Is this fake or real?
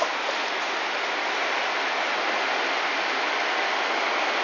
real